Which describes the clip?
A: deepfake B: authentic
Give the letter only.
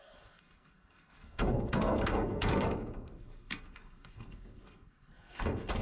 A